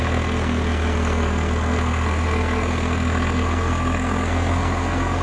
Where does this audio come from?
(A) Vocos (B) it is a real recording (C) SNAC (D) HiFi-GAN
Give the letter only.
C